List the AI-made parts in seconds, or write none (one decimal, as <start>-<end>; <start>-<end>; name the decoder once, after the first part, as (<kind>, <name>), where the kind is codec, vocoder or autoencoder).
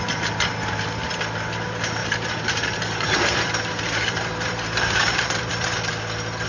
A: 2.0-5.9 (vocoder, BigVGAN v2)